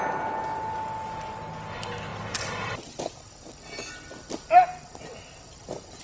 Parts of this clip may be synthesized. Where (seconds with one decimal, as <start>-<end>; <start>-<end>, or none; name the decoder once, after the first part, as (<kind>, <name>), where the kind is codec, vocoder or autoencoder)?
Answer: 2.1-2.8 (vocoder, BigVGAN v2)